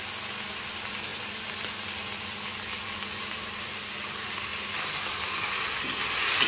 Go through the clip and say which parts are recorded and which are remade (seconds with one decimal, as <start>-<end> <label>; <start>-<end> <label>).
0.0-6.5 recorded